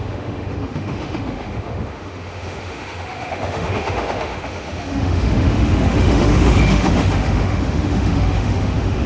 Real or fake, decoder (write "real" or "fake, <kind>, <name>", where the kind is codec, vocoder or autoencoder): fake, autoencoder, DAC-VAE